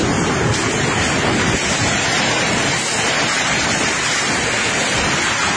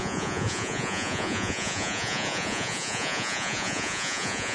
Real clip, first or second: first